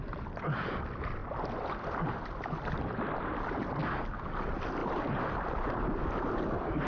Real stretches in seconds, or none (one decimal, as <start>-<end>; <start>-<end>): 0.0-6.9